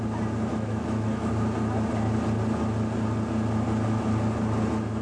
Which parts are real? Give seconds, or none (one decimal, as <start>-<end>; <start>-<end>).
0.0-0.5; 1.3-5.0